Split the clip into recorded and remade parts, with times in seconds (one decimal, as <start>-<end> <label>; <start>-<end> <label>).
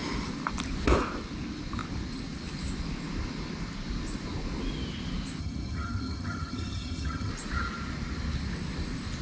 0.0-5.4 recorded; 5.4-7.3 remade; 7.3-9.2 recorded